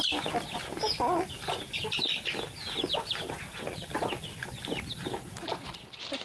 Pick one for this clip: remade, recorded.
recorded